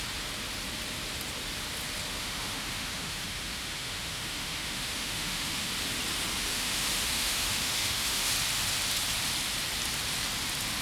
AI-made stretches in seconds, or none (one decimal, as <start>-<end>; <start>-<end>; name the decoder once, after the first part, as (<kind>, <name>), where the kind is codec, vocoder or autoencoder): 2.2-5.7 (autoencoder, DAC-VAE); 6.5-8.3